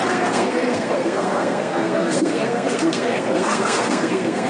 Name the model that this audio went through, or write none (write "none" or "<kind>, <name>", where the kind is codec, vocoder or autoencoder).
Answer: codec, SNAC